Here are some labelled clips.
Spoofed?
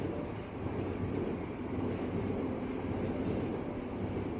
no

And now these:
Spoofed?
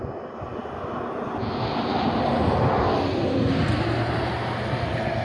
no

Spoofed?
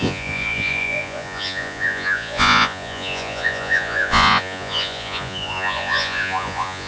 yes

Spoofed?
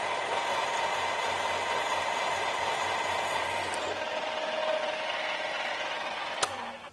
no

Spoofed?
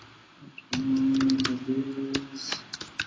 no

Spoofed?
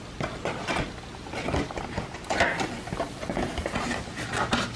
no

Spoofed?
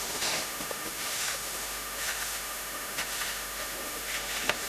yes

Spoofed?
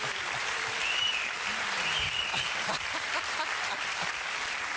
yes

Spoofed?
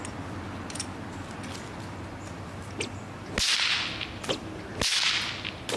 no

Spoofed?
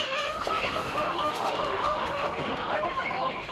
yes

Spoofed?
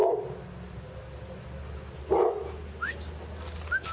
no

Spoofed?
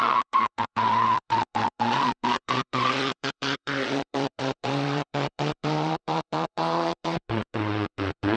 yes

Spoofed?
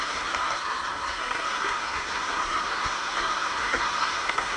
yes